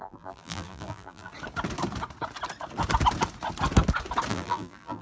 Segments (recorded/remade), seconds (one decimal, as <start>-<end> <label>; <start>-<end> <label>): 0.0-1.3 remade; 1.3-4.3 recorded; 4.3-5.0 remade